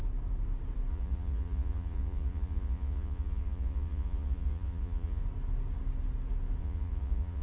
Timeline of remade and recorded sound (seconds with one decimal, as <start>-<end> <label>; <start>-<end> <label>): 0.0-0.9 recorded; 0.9-5.2 remade; 5.2-6.6 recorded; 6.6-7.4 remade